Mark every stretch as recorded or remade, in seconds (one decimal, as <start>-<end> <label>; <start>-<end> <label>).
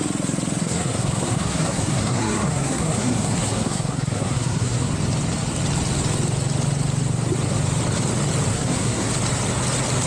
0.0-0.6 recorded; 0.6-4.9 remade; 4.9-8.5 recorded; 8.5-9.1 remade; 9.1-10.1 recorded